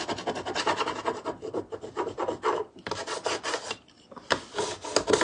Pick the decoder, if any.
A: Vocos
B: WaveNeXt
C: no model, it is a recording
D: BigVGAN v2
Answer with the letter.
C